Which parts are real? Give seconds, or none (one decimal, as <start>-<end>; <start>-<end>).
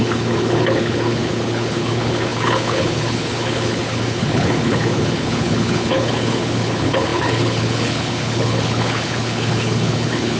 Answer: none